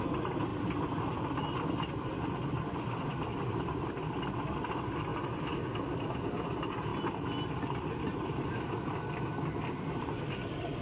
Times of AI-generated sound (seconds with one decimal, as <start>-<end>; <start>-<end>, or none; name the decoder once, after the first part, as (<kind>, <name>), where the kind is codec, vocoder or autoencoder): none